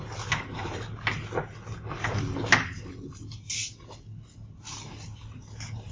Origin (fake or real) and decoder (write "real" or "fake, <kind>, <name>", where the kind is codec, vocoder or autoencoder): real